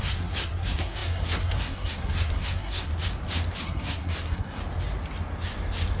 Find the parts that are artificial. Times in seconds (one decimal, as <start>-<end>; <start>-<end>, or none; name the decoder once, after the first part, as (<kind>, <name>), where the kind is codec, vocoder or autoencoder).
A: 0.0-2.9 (codec, SNAC); 3.6-4.6